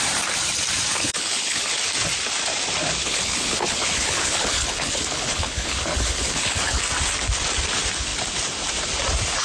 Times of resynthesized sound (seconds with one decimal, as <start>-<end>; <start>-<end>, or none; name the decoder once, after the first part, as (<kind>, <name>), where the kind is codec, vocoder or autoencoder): 0.9-1.7 (codec, HILCodec); 3.0-6.8